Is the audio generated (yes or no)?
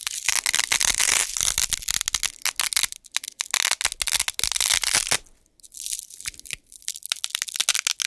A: no